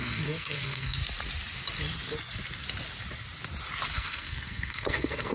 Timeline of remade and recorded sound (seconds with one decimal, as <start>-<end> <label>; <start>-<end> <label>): 0.0-1.0 remade; 1.0-3.9 recorded; 3.9-5.3 remade